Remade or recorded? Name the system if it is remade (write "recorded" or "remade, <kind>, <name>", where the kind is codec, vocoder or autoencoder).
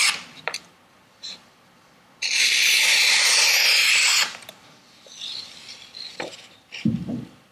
remade, vocoder, BigVGAN v2